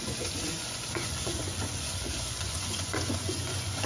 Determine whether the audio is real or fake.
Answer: fake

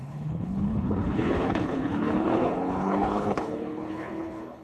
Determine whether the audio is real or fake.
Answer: fake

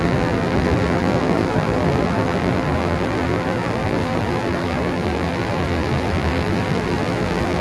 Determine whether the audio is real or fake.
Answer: fake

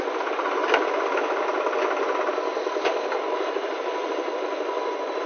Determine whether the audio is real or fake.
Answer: real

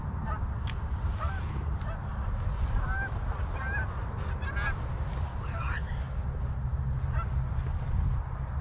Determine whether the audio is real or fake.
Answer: real